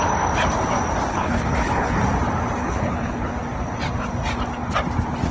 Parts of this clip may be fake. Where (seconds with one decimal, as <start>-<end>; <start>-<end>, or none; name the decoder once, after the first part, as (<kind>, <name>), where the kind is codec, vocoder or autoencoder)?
1.1-2.0 (codec, HILCodec); 2.6-3.3